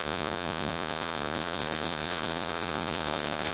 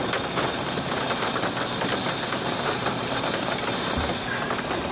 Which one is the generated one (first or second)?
first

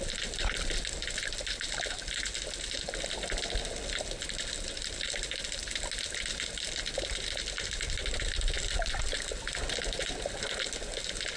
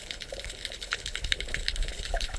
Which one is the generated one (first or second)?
second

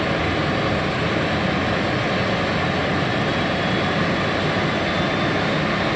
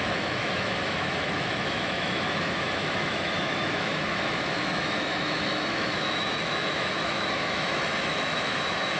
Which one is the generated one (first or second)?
second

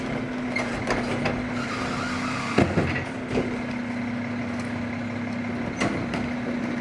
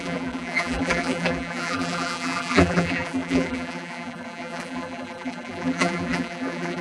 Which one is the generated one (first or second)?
second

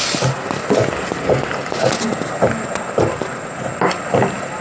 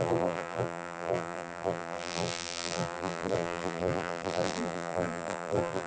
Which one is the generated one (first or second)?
second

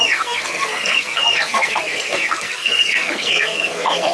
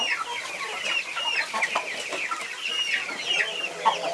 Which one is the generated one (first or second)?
first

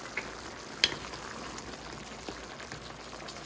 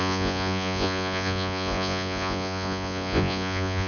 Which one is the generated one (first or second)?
second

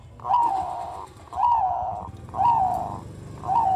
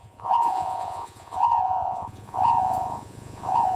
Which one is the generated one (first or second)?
second